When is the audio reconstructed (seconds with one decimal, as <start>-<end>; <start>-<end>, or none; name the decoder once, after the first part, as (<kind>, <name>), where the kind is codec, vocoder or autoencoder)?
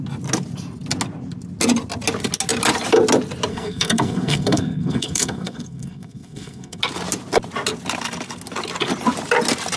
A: 3.5-6.8 (codec, SNAC)